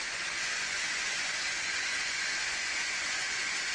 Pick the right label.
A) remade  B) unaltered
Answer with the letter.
A